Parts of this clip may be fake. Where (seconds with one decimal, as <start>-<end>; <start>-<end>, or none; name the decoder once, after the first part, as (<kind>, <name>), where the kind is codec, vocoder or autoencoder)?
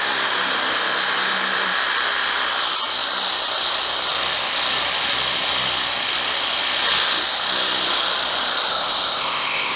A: 8.7-9.8 (codec, ZipCodec)